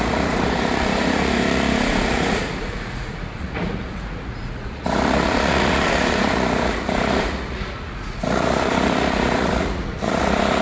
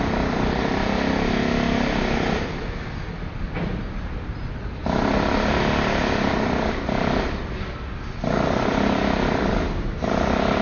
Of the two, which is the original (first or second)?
second